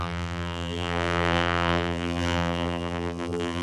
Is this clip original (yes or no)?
no